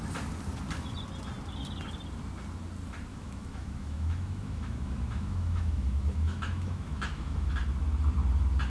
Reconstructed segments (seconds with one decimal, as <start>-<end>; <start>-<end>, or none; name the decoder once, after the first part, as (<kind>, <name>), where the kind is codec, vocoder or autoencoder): 3.1-7.5 (autoencoder, DAC-VAE)